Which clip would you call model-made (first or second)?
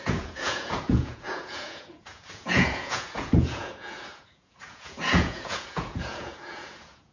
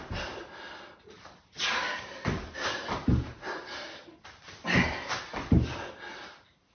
first